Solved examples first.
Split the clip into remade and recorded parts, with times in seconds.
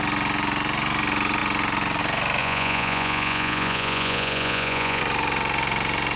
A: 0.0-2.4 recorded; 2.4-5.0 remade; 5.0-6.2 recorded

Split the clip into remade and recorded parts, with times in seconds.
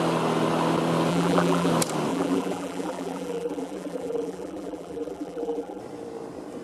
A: 0.0-1.1 recorded; 1.1-1.7 remade; 1.7-2.1 recorded; 2.1-5.8 remade; 5.8-6.6 recorded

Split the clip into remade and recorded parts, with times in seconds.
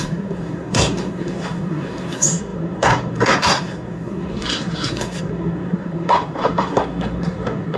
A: 0.0-7.8 remade